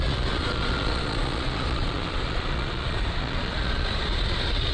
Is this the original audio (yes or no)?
no